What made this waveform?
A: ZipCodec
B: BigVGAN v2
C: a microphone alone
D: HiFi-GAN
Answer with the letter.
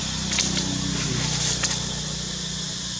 C